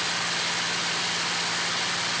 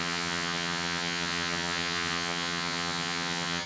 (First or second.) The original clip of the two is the first